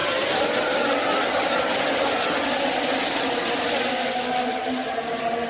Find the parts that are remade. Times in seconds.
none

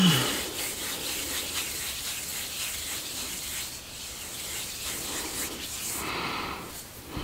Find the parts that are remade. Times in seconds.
0.0-7.2 (vocoder, BigVGAN v2)

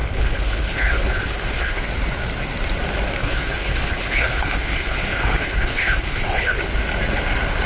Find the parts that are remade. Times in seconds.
0.0-1.8 (codec, HILCodec); 3.2-6.6